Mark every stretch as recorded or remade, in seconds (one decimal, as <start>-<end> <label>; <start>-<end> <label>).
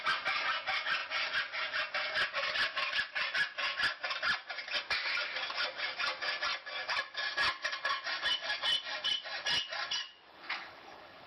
0.0-10.3 recorded; 10.3-11.3 remade